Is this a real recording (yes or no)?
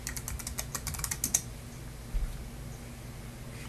yes